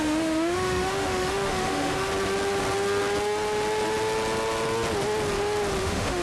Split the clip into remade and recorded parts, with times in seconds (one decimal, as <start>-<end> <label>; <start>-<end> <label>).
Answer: 0.0-2.1 remade; 2.1-5.8 recorded; 5.8-6.2 remade